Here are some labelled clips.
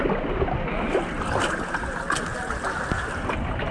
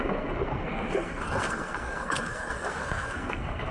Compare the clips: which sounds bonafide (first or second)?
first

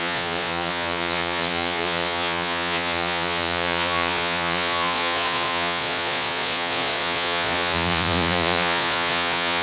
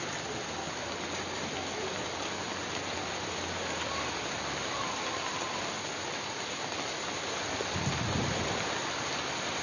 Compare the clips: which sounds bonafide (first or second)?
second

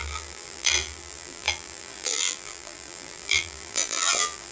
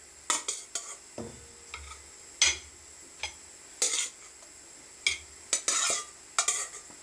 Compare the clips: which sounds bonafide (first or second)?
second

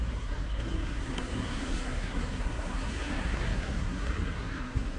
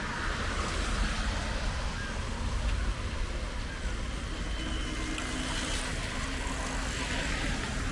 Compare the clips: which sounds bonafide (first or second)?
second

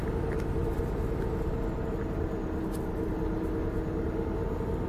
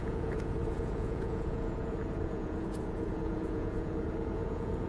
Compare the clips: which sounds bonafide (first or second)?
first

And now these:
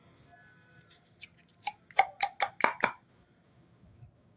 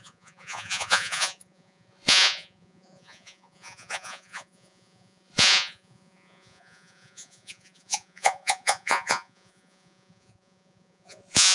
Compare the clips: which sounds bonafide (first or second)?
first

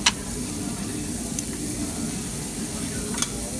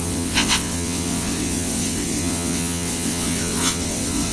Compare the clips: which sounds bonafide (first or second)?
first